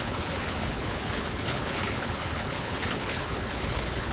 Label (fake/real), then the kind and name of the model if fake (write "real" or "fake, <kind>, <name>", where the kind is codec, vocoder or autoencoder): fake, codec, HILCodec